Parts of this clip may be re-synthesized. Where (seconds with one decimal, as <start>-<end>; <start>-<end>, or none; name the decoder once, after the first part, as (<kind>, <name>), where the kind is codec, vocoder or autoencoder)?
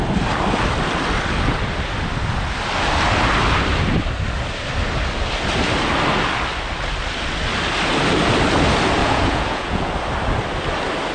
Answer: 9.0-9.9 (vocoder, Vocos)